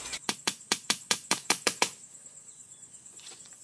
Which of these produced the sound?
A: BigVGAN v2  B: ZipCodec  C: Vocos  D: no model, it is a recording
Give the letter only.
C